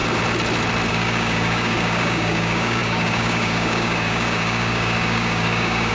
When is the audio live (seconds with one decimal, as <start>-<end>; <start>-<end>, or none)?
0.0-0.9